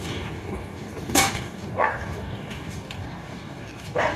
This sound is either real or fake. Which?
fake